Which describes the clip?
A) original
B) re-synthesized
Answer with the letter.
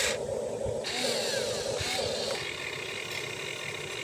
A